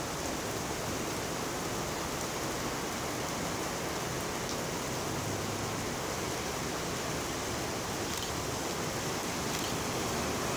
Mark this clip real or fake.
real